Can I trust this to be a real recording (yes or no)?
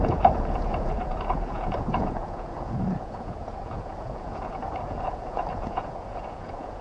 no